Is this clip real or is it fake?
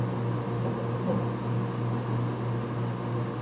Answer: real